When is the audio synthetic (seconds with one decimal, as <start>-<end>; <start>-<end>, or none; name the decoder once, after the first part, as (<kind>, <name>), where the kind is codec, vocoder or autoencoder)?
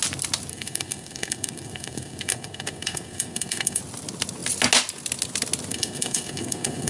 0.5-3.8 (codec, SNAC); 5.7-6.9